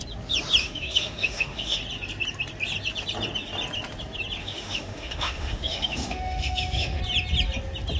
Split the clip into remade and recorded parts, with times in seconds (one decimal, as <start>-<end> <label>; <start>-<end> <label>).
0.0-0.6 recorded; 0.6-1.8 remade; 1.8-4.4 recorded; 4.4-7.0 remade; 7.0-8.0 recorded